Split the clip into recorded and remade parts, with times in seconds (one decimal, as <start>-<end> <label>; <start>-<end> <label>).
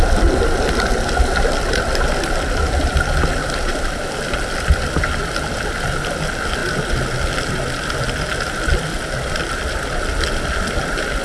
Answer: 0.0-8.9 recorded; 8.9-10.0 remade; 10.0-11.2 recorded